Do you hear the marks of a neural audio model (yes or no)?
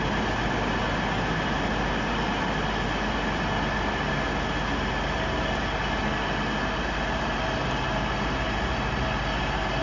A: no